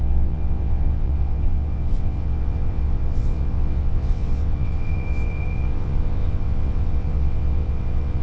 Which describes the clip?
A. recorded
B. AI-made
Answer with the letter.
B